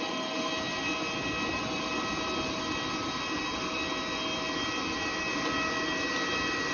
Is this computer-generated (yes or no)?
no